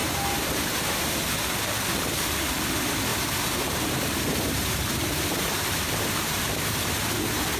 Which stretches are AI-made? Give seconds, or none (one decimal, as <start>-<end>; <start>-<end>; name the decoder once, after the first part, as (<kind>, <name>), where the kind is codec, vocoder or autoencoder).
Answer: 0.0-1.1 (vocoder, BigVGAN v2); 3.1-7.0